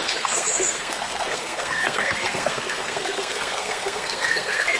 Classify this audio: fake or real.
fake